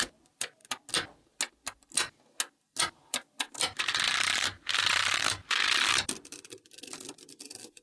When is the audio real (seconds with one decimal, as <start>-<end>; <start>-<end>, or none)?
0.6-3.0